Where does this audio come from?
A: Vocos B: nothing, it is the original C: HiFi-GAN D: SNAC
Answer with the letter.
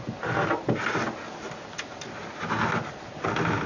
B